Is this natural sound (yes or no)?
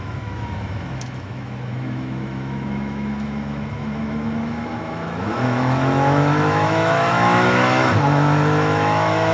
no